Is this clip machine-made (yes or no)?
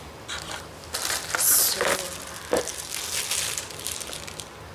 no